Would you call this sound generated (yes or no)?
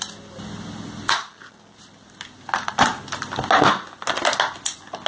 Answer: no